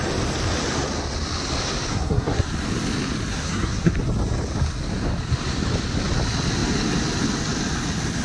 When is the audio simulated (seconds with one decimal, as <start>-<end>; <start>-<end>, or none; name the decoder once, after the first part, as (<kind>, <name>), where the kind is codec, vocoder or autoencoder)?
1.9-2.5 (codec, SNAC); 3.3-3.9